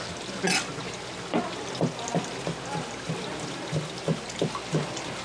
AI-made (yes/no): no